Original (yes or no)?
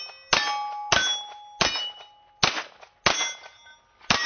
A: yes